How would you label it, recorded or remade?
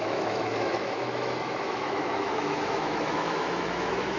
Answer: remade